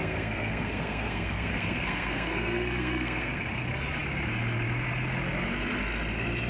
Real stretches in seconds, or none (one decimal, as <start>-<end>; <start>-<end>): 3.4-6.5